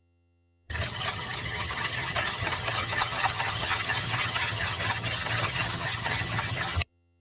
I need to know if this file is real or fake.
fake